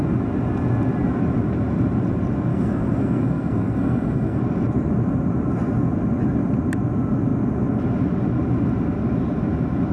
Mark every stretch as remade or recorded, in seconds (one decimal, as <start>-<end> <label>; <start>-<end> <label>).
0.0-2.5 recorded; 2.5-4.4 remade; 4.4-9.9 recorded